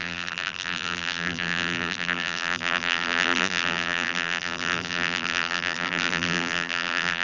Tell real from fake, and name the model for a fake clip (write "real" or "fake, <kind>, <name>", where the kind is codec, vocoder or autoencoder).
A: fake, vocoder, BigVGAN v2